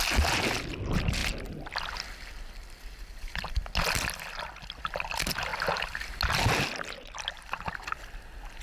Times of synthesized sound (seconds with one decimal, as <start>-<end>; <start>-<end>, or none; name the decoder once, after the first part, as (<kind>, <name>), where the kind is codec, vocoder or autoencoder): none